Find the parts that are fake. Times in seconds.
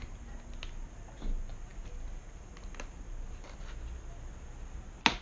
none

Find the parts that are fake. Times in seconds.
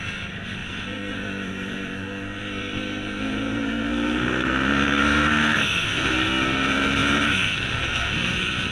0.0-8.7 (codec, SNAC)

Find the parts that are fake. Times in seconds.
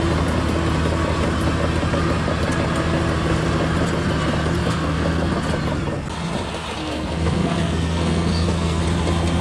4.6-5.3 (codec, SNAC); 6.8-8.8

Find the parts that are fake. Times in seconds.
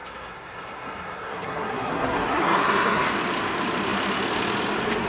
0.0-3.1 (codec, SNAC)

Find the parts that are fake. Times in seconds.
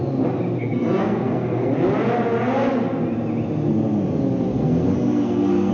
0.6-1.7 (codec, SNAC); 4.5-5.7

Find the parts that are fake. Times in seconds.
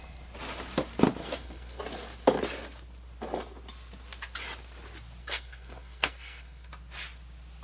1.2-1.8 (codec, SNAC); 5.2-6.7